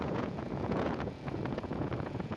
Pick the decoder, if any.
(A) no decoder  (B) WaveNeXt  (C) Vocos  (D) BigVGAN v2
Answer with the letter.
C